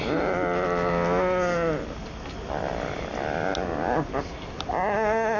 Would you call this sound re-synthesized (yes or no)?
no